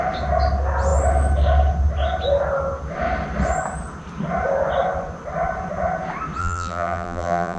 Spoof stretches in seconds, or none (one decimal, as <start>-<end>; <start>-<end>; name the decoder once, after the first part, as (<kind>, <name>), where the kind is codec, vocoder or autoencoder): 6.4-7.6 (vocoder, BigVGAN v2)